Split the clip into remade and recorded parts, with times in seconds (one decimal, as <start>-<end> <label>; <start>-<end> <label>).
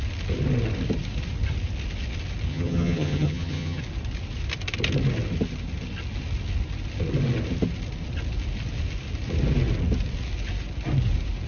0.0-2.5 recorded; 2.5-3.8 remade; 3.8-11.5 recorded